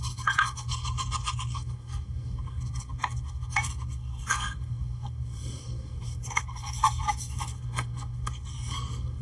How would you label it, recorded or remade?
remade